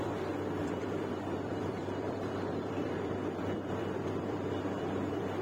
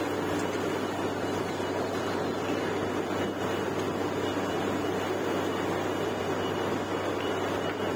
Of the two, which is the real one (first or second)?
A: second